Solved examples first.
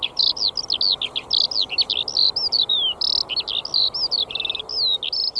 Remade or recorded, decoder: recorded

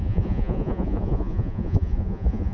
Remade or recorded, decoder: remade, vocoder, Vocos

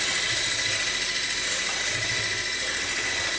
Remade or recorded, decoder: recorded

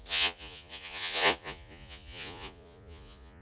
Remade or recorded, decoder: remade, vocoder, Vocos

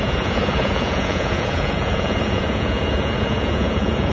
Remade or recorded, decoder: remade, vocoder, Vocos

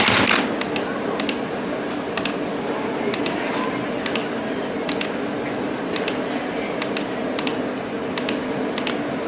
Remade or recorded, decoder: recorded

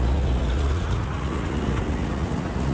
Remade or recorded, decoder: remade, vocoder, Vocos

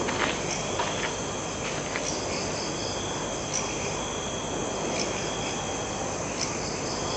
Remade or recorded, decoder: recorded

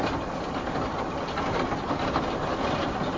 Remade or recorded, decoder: recorded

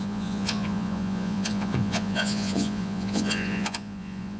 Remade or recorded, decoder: remade, vocoder, Vocos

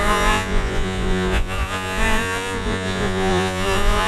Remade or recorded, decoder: remade, vocoder, Vocos